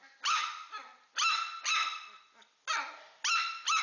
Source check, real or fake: real